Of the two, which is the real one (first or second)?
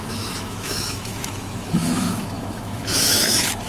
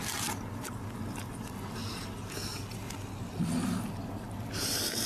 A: second